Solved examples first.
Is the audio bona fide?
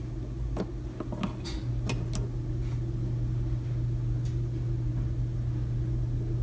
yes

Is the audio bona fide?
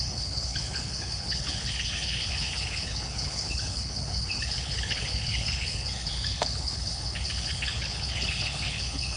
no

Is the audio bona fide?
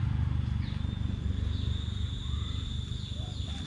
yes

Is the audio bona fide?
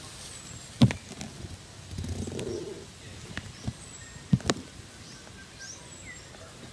yes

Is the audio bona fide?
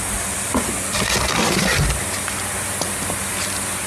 yes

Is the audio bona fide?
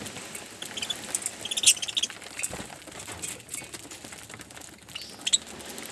yes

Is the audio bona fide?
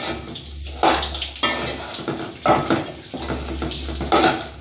yes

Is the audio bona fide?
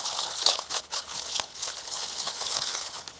no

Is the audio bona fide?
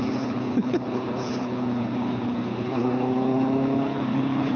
no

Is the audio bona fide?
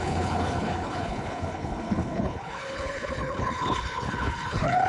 no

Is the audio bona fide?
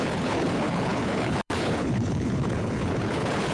no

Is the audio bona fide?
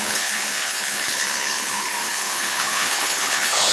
no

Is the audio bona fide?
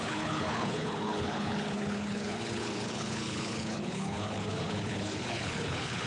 no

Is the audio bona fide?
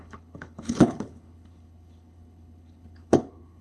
no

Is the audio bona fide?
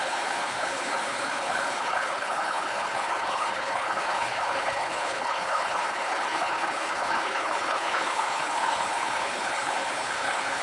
no